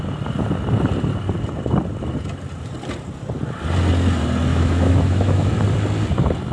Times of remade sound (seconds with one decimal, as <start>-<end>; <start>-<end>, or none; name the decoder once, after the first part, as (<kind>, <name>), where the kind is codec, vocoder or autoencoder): 4.5-5.5 (autoencoder, DAC-VAE)